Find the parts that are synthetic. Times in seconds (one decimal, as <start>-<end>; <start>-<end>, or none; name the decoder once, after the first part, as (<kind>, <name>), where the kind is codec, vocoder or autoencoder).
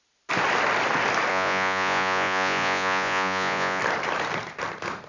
1.3-3.8 (vocoder, Vocos)